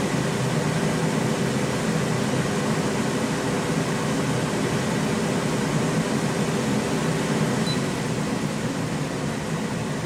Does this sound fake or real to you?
real